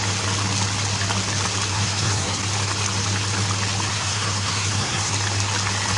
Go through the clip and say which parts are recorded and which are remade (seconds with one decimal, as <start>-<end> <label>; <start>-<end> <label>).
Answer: 0.0-1.7 recorded; 1.7-2.4 remade; 2.4-3.9 recorded; 3.9-5.1 remade; 5.1-6.0 recorded